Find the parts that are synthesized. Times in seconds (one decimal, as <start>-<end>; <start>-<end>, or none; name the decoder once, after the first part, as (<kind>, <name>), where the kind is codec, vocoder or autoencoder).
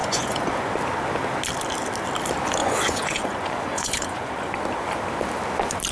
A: 0.0-0.7 (vocoder, Vocos); 2.6-4.5